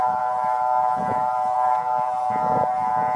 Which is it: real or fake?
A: fake